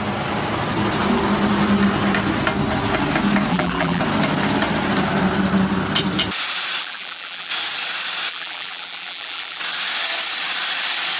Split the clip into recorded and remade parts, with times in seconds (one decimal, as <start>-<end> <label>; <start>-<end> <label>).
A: 0.0-3.5 recorded; 3.5-4.0 remade; 4.0-6.8 recorded; 6.8-7.5 remade; 7.5-8.3 recorded; 8.3-9.6 remade; 9.6-11.2 recorded